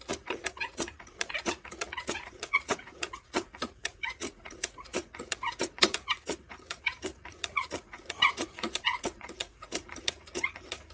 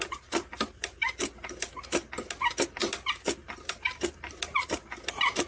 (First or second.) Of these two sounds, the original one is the second